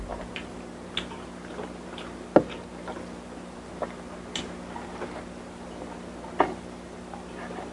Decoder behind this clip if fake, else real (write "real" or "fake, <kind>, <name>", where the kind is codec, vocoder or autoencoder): fake, vocoder, BigVGAN v2